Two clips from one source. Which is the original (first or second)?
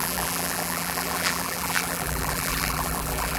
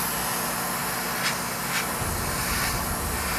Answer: second